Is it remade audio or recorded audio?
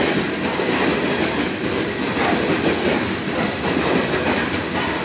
recorded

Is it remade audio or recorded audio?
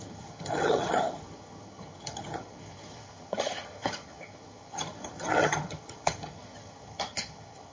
remade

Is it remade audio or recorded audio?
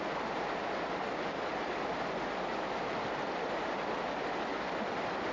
remade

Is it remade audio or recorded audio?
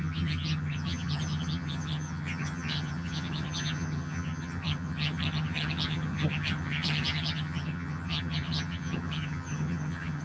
remade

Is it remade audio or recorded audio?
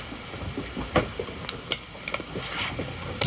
recorded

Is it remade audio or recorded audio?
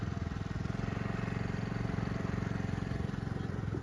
recorded